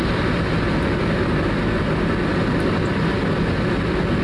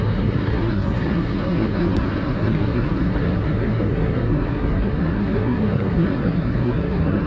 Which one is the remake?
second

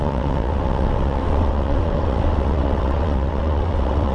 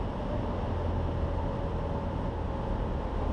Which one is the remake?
first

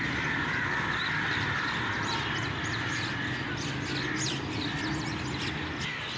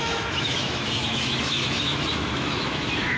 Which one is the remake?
second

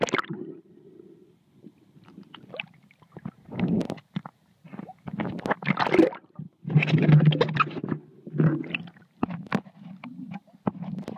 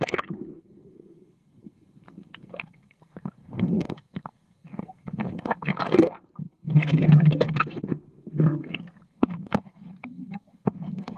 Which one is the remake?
second